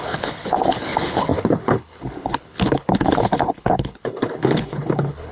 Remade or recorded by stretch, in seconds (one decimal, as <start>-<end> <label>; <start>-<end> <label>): 0.0-5.3 remade